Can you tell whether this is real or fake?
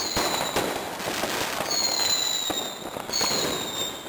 real